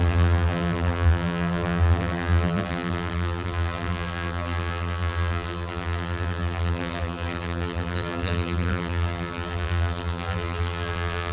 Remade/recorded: remade